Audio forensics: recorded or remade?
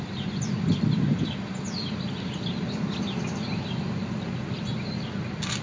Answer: recorded